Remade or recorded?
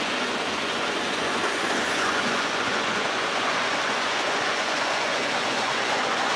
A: remade